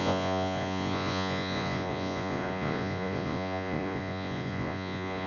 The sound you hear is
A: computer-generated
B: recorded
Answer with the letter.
A